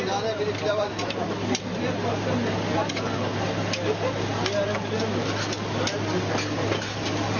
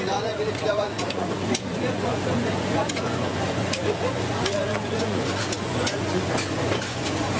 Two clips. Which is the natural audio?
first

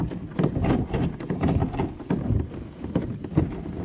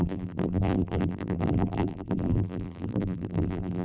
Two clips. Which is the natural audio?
first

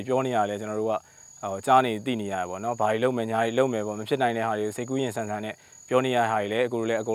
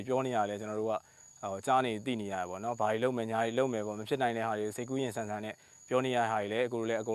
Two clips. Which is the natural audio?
first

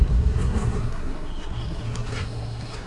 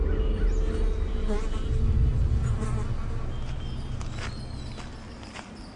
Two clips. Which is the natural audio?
second